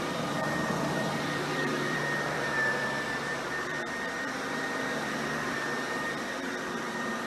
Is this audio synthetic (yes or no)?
yes